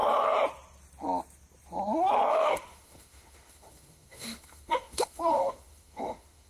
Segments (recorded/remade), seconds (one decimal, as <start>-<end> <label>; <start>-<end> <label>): 0.0-2.3 recorded; 2.3-6.5 remade